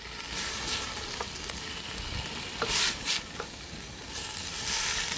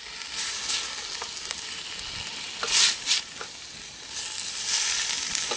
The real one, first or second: second